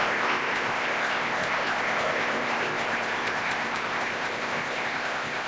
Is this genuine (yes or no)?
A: no